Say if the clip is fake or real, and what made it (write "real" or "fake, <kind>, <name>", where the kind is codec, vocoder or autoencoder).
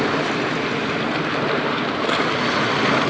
real